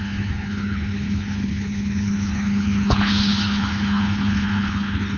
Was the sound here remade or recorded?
remade